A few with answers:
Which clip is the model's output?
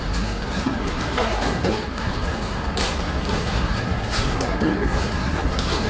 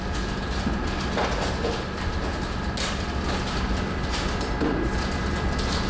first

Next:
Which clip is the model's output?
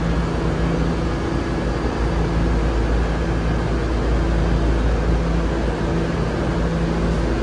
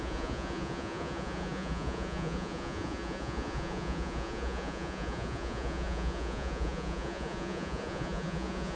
second